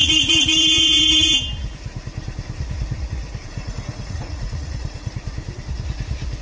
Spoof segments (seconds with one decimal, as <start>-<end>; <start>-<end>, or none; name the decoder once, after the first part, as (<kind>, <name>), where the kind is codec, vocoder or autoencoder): 0.0-1.3 (vocoder, Vocos); 3.5-5.1